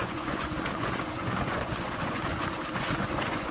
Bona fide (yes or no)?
no